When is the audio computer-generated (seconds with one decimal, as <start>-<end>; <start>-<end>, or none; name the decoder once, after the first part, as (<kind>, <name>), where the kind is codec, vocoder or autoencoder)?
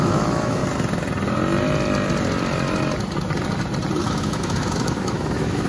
0.0-0.6 (autoencoder, DAC-VAE); 4.0-5.7